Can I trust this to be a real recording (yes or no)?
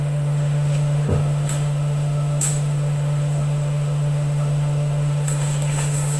no